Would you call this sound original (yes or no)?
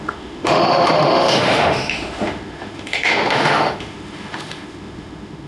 no